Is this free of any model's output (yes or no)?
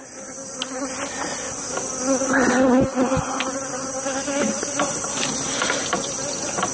yes